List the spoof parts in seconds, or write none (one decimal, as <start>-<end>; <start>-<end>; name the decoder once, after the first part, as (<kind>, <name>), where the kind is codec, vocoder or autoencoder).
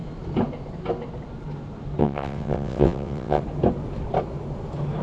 2.0-3.4 (vocoder, WaveNeXt)